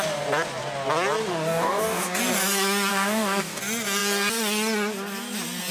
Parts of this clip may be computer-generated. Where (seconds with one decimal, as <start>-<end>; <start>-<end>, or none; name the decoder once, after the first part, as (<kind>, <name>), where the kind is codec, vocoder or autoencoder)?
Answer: 1.3-2.2 (codec, DAC); 2.9-3.6